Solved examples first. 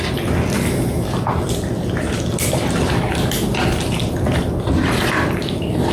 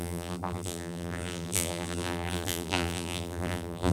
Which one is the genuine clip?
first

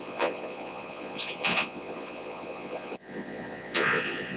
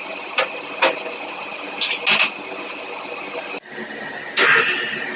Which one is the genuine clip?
second